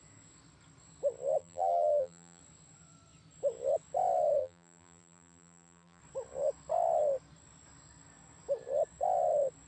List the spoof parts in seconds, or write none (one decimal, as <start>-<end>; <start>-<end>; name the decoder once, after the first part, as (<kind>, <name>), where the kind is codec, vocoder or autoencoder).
1.4-2.4 (vocoder, BigVGAN v2); 4.4-6.0